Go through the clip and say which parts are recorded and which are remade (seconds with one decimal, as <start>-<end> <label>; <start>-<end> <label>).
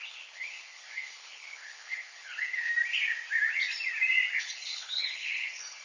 0.0-2.7 remade; 2.7-4.4 recorded; 4.4-5.8 remade